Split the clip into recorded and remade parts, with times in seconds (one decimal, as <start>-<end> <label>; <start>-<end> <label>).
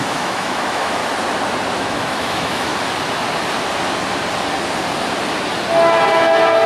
0.0-1.0 remade; 1.0-1.8 recorded; 1.8-2.7 remade; 2.7-6.7 recorded